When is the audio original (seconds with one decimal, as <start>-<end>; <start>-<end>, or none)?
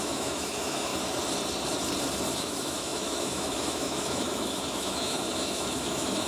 0.9-2.4